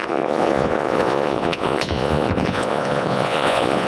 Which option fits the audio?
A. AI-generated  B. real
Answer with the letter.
A